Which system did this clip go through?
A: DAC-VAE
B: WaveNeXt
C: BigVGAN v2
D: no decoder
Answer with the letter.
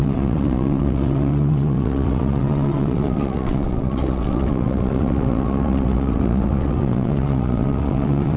B